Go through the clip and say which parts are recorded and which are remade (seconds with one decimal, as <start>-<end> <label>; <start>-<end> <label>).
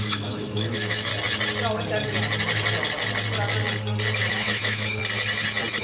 0.0-1.1 remade; 1.1-4.3 recorded; 4.3-5.0 remade; 5.0-5.8 recorded